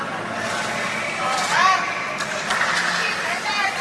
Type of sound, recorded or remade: recorded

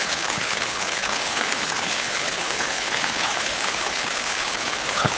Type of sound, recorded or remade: remade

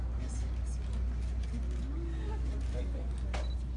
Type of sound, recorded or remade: recorded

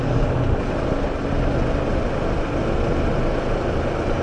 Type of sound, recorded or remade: recorded